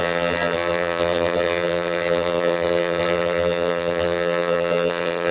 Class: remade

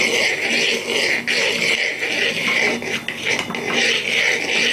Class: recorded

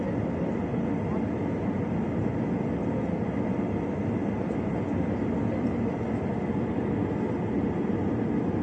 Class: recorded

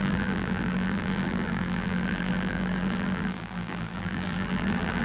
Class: remade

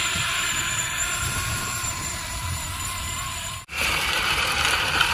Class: remade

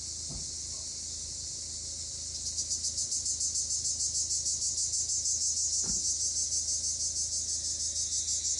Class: recorded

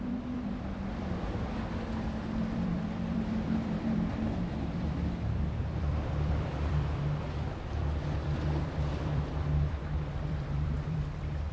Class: remade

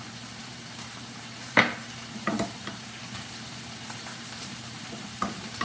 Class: remade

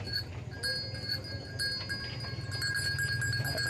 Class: recorded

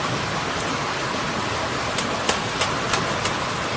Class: recorded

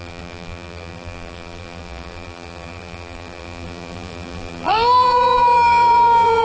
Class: remade